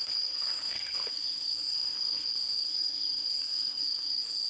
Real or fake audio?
fake